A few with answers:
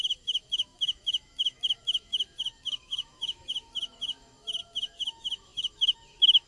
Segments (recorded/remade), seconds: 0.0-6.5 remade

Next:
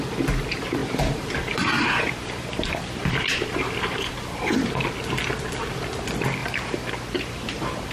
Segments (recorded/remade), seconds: 0.0-0.8 recorded; 0.8-4.7 remade; 4.7-6.4 recorded; 6.4-7.9 remade